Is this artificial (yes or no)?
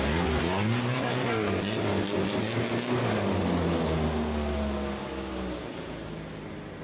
no